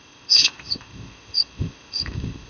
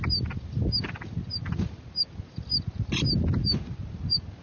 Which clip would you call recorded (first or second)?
second